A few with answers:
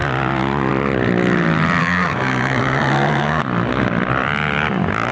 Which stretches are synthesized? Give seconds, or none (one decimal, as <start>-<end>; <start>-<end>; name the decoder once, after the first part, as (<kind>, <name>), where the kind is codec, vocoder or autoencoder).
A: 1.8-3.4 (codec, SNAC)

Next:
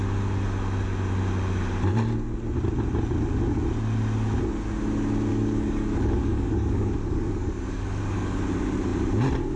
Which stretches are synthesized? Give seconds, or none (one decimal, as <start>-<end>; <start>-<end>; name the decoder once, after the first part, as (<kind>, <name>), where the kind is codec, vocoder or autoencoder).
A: 5.3-8.4 (codec, DAC)

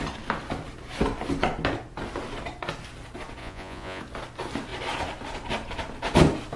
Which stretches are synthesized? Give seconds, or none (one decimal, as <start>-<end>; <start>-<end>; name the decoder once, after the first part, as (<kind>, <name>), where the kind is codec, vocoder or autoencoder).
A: 3.4-4.0 (vocoder, Vocos)

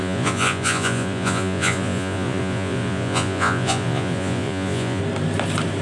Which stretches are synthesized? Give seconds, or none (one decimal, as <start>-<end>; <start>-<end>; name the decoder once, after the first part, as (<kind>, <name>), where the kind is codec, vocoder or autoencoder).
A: 0.0-5.0 (vocoder, Vocos)

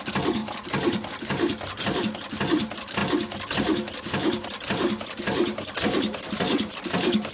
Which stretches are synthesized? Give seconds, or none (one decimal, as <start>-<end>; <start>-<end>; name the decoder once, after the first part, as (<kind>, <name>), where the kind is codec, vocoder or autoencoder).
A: none

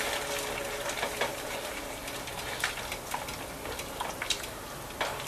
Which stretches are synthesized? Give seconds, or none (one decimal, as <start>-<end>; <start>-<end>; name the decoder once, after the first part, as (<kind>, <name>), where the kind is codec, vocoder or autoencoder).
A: 1.3-2.0 (vocoder, BigVGAN v2)